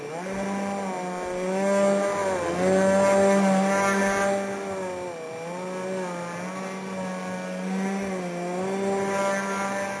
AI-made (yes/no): no